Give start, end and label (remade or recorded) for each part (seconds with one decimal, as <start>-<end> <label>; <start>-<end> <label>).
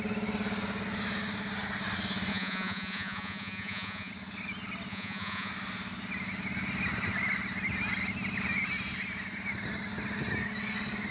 0.0-2.3 recorded; 2.3-4.1 remade; 4.1-4.9 recorded; 4.9-5.5 remade; 5.5-11.1 recorded